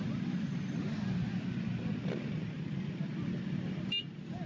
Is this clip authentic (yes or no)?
yes